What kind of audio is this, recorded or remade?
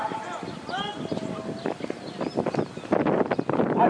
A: recorded